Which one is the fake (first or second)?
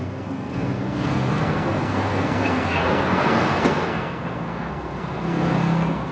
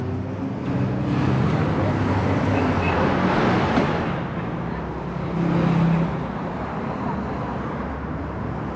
first